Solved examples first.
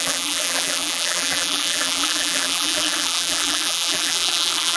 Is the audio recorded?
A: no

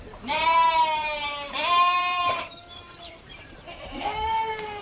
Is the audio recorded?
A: no